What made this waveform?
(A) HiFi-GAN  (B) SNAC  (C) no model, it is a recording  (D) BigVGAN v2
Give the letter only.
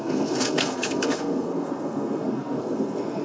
B